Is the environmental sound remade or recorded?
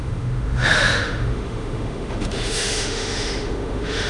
remade